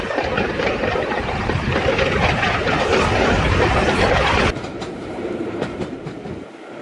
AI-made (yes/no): yes